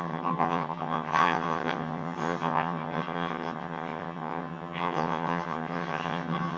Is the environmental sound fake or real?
fake